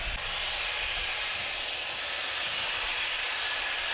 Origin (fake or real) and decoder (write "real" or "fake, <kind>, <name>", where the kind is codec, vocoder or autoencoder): real